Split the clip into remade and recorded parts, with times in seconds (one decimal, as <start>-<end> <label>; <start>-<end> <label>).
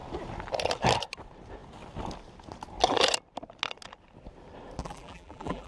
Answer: 0.0-4.8 recorded; 4.8-5.7 remade